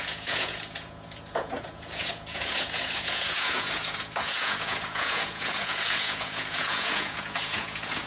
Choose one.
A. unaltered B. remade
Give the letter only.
B